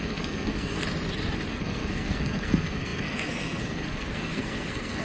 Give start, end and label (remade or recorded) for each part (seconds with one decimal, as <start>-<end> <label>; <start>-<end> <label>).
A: 0.0-0.8 remade; 0.8-1.5 recorded; 1.5-5.0 remade